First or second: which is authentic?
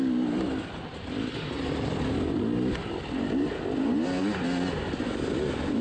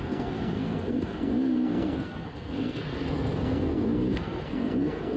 first